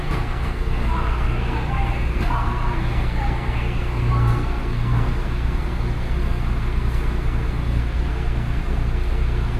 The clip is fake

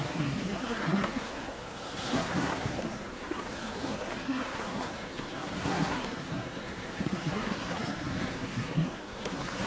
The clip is fake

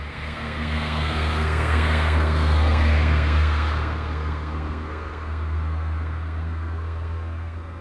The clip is fake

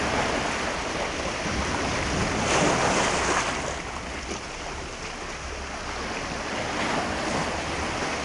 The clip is real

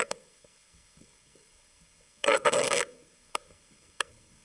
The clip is fake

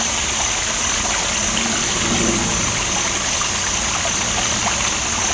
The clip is real